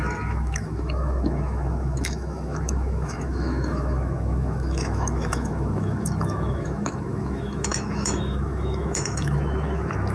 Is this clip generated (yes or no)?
yes